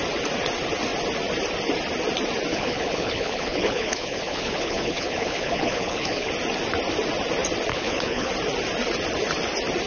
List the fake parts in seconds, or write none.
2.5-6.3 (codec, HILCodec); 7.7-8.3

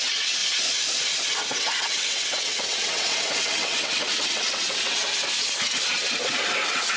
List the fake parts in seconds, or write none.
0.0-0.4 (vocoder, WaveNeXt); 1.5-5.0; 6.6-7.0

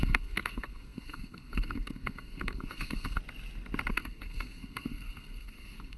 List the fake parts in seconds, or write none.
0.0-3.2 (codec, SNAC); 3.9-6.0

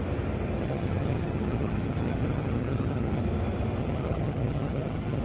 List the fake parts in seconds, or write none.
0.6-3.2 (vocoder, HiFi-GAN); 3.8-5.2

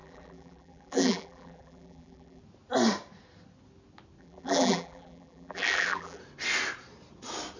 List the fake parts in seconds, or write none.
0.0-2.4 (vocoder, BigVGAN v2); 4.2-6.2